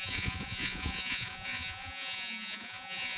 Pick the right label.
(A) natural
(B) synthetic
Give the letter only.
B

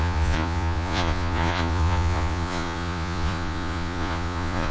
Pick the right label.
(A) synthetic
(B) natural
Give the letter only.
A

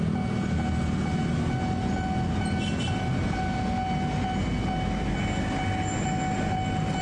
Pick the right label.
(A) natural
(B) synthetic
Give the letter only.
A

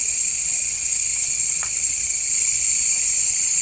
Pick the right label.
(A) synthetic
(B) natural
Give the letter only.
A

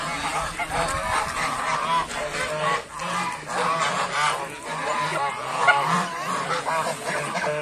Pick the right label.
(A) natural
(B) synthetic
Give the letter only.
A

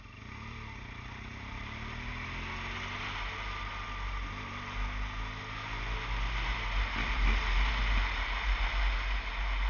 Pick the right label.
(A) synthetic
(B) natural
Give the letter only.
B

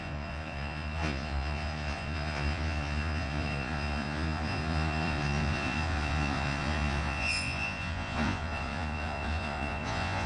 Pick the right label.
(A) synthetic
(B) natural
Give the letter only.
A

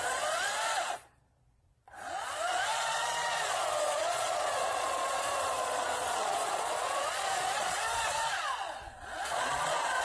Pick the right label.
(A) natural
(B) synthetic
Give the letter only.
B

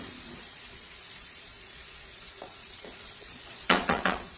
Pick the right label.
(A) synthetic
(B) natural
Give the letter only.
A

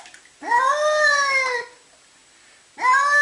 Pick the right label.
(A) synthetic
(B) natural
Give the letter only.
B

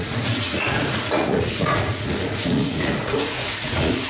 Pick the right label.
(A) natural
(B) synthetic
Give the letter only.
B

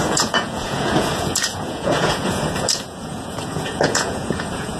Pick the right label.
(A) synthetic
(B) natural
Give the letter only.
A